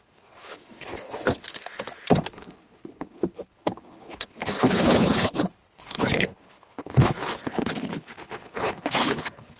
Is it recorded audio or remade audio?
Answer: remade